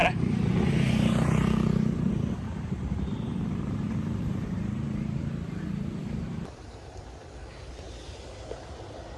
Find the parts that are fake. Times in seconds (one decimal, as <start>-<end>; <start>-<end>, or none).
0.0-5.3; 6.0-7.7